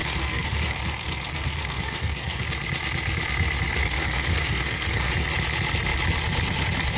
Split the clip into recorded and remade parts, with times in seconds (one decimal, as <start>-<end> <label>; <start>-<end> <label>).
0.0-2.5 remade; 2.5-3.8 recorded; 3.8-5.1 remade; 5.1-7.0 recorded